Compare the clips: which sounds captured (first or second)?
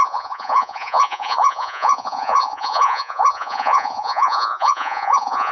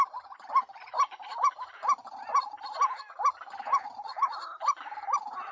second